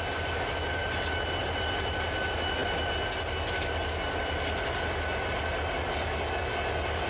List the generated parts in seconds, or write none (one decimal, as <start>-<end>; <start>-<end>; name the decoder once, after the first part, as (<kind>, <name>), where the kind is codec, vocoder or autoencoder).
none